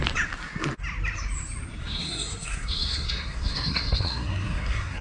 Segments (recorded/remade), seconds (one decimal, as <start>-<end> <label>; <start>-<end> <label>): 0.0-1.8 recorded; 1.8-5.0 remade

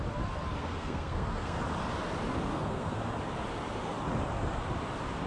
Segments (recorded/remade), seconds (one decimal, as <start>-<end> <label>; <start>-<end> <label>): 0.0-0.6 recorded; 0.6-1.6 remade; 1.6-2.5 recorded; 2.5-3.0 remade; 3.0-5.3 recorded

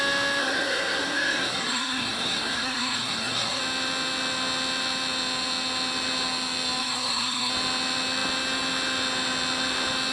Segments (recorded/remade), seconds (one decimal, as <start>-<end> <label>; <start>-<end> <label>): 0.0-0.4 recorded; 0.4-3.6 remade; 3.6-6.8 recorded; 6.8-7.5 remade; 7.5-10.1 recorded

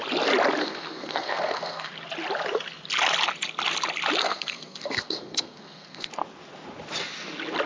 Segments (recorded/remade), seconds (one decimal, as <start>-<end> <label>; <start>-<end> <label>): 0.0-0.6 recorded; 0.6-1.9 remade; 1.9-4.2 recorded; 4.2-6.1 remade; 6.1-7.7 recorded

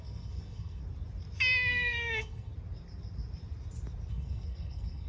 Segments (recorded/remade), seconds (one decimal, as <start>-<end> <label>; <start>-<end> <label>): 0.0-0.8 remade; 0.8-1.7 recorded; 1.7-2.5 remade; 2.5-4.1 recorded; 4.1-5.1 remade

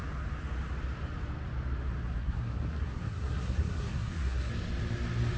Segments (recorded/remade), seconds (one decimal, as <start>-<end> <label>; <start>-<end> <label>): 0.0-2.2 recorded; 2.2-4.5 remade; 4.5-5.4 recorded

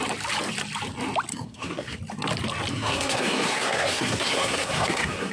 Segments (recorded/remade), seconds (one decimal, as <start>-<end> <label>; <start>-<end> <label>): 0.0-1.3 recorded; 1.3-2.0 remade; 2.0-2.7 recorded; 2.7-5.3 remade